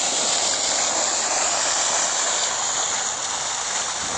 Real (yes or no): yes